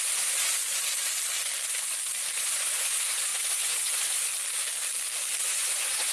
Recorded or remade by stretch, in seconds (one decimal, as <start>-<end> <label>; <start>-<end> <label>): 0.0-0.6 remade; 0.6-2.4 recorded; 2.4-4.3 remade; 4.3-5.4 recorded; 5.4-6.1 remade